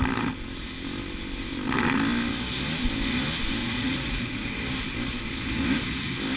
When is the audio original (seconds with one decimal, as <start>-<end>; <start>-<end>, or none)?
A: 0.0-3.6; 4.5-6.4